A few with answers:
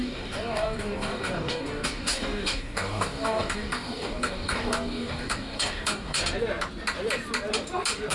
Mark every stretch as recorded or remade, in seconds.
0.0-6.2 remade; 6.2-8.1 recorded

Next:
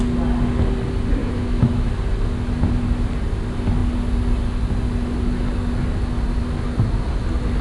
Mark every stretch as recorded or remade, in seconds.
0.0-1.2 recorded; 1.2-1.9 remade; 1.9-7.6 recorded

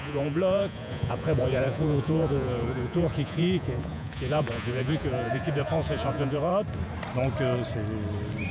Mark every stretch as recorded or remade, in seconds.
0.0-6.5 remade; 6.5-8.5 recorded

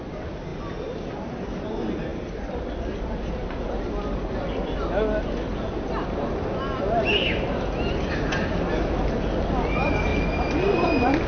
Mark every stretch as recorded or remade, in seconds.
0.0-0.5 recorded; 0.5-1.7 remade; 1.7-2.1 recorded; 2.1-2.7 remade; 2.7-11.3 recorded

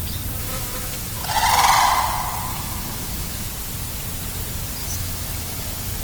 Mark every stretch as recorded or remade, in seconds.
0.0-0.4 recorded; 0.4-1.2 remade; 1.2-2.5 recorded; 2.5-3.5 remade; 3.5-4.8 recorded; 4.8-6.0 remade

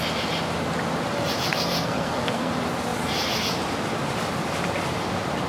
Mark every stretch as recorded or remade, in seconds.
0.0-1.5 recorded; 1.5-2.5 remade; 2.5-5.5 recorded